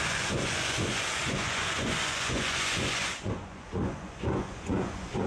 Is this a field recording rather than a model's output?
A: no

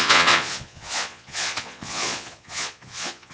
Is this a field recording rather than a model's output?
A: no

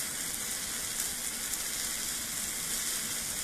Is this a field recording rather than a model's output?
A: yes